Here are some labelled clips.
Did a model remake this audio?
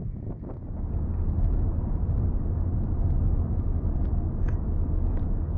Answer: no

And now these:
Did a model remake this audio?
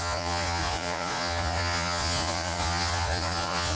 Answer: yes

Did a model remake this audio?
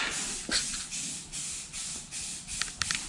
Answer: no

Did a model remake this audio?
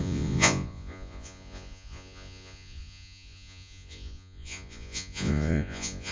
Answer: yes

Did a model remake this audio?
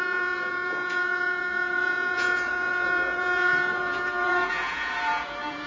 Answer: yes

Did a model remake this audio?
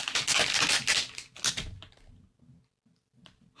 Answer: no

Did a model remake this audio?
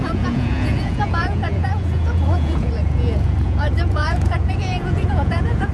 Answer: yes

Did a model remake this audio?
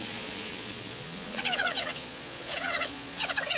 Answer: yes